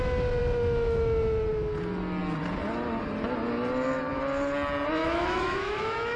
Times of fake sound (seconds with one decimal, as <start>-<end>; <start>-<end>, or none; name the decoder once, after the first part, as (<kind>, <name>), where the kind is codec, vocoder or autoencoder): 5.0-6.2 (autoencoder, DAC-VAE)